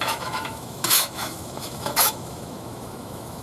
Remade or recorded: remade